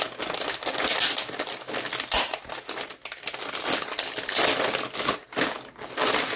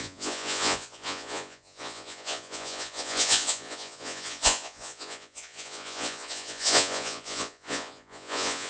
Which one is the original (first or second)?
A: first